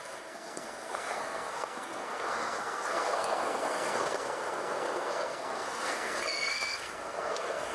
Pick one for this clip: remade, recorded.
remade